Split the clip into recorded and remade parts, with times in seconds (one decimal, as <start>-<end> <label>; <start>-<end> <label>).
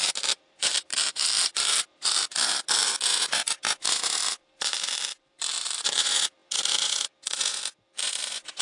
0.0-2.9 remade; 2.9-4.2 recorded; 4.2-5.8 remade; 5.8-8.6 recorded